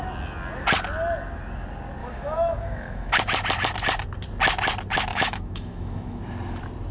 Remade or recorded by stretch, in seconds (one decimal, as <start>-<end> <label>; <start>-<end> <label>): 0.0-2.0 recorded; 2.0-3.2 remade; 3.2-5.1 recorded; 5.1-6.2 remade; 6.2-6.9 recorded